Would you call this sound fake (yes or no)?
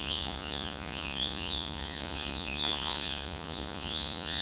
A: yes